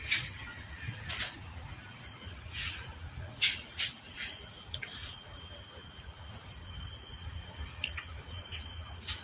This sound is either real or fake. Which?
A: fake